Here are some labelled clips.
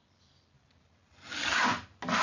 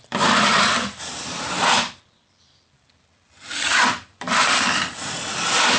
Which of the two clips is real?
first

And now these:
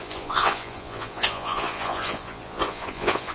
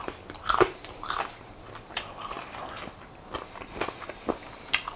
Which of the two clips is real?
second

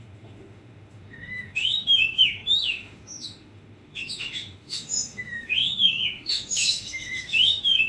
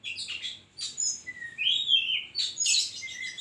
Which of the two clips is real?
second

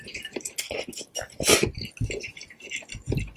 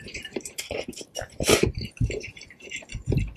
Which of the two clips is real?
first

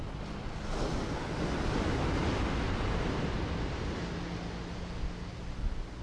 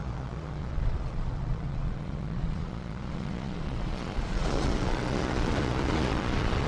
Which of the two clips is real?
first